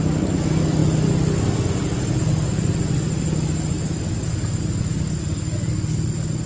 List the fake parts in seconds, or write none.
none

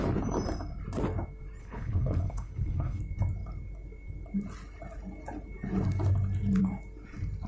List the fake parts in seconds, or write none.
1.6-3.0

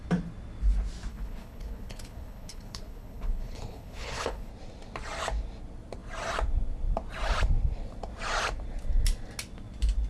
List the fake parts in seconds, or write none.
1.1-4.5

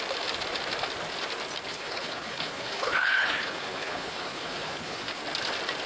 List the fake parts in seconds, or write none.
1.7-5.2